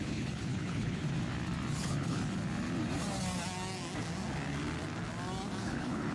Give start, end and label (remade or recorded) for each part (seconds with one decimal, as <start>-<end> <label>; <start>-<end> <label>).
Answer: 0.0-1.0 remade; 1.0-1.7 recorded; 1.7-2.2 remade; 2.2-5.6 recorded; 5.6-6.1 remade